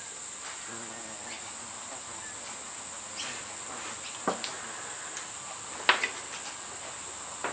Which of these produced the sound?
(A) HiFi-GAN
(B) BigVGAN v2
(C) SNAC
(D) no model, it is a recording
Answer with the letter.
D